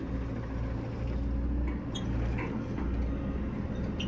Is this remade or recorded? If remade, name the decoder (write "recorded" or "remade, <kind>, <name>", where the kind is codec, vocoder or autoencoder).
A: recorded